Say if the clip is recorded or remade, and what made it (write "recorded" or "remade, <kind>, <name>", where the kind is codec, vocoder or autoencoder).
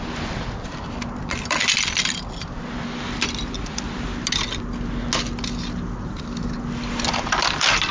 recorded